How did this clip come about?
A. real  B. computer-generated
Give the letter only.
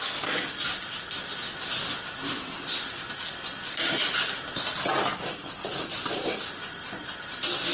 A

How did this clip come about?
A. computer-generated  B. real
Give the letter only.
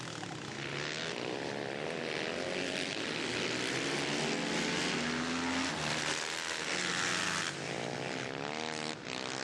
B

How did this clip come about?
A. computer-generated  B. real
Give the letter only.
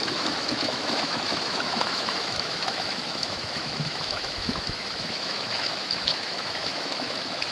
A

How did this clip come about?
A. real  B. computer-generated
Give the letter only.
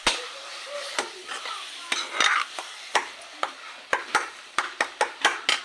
A